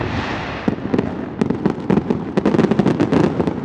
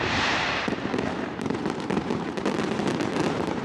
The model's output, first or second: second